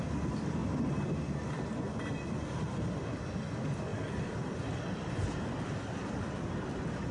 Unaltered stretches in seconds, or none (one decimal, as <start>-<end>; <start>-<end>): 0.6-1.5